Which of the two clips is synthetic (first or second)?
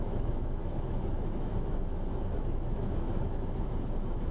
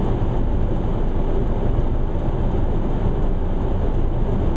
first